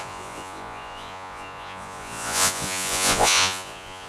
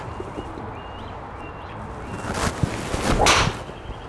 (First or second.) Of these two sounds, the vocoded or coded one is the first